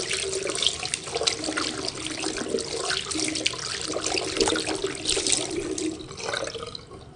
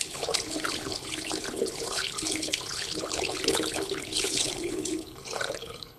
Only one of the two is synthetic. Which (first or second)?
second